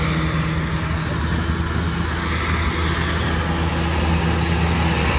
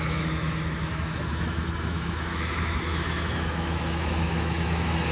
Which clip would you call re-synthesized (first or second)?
second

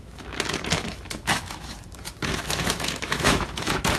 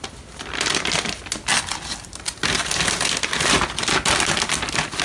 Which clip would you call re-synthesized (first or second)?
first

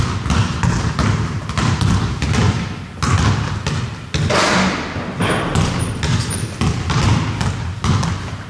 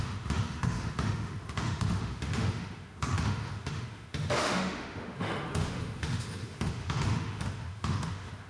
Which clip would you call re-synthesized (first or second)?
second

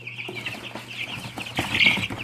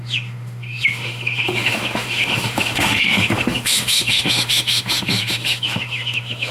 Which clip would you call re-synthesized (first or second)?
second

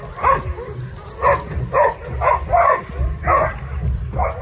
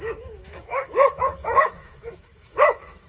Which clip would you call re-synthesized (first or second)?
second